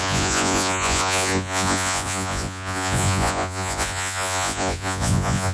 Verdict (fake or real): fake